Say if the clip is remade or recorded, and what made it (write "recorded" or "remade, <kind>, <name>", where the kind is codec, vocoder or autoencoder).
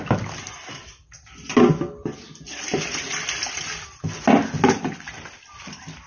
recorded